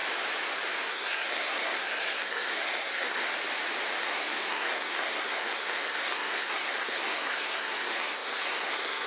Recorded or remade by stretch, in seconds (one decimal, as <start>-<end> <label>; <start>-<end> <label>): 0.0-0.9 recorded; 0.9-3.3 remade; 3.3-4.0 recorded; 4.0-9.1 remade